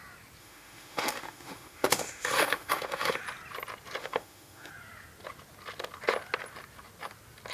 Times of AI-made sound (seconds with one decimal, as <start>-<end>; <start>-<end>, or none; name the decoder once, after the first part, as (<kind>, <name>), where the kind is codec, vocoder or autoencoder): 0.4-3.2 (autoencoder, DAC-VAE); 4.0-4.7